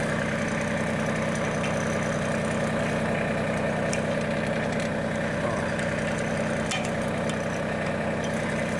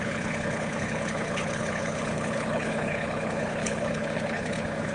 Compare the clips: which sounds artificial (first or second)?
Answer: second